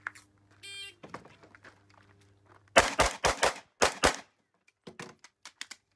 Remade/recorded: recorded